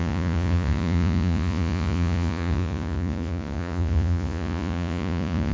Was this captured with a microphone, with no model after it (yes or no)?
no